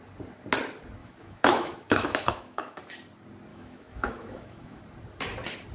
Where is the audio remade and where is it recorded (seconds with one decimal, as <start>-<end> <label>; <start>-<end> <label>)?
0.0-1.0 recorded; 1.0-2.8 remade; 2.8-3.5 recorded; 3.5-4.8 remade; 4.8-5.7 recorded